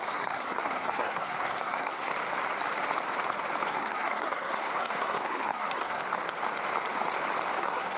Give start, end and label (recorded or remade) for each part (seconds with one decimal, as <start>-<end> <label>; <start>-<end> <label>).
0.0-2.1 remade; 2.1-3.7 recorded; 3.7-6.0 remade; 6.0-7.6 recorded; 7.6-8.0 remade